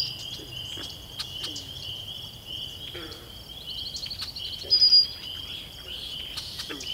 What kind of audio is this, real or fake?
real